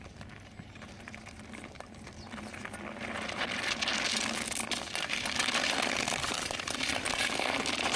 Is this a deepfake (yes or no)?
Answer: no